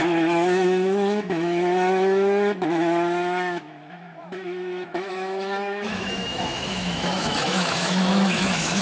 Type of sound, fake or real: fake